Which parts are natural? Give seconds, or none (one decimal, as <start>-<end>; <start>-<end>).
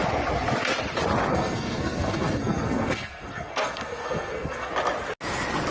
0.0-1.3; 4.7-5.7